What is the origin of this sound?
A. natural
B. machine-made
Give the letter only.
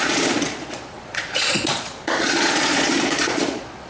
B